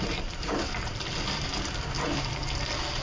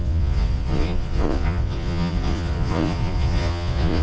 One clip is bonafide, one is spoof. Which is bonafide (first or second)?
first